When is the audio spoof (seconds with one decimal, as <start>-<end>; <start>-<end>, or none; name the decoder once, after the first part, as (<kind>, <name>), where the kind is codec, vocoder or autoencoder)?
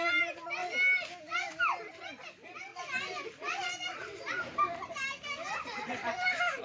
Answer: 0.0-0.6 (vocoder, BigVGAN v2); 1.2-2.7; 3.3-5.0; 5.8-6.6